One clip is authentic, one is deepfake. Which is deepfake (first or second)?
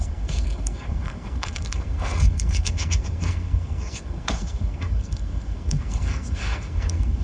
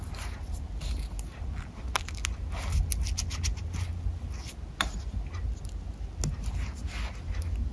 first